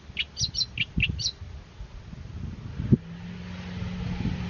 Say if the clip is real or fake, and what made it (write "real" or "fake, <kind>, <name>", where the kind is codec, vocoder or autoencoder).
real